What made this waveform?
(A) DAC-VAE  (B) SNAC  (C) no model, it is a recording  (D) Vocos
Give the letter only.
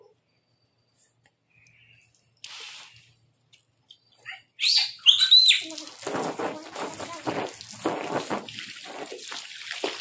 C